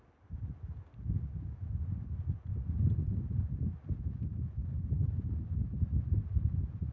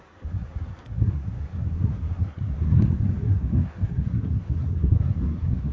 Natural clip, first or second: first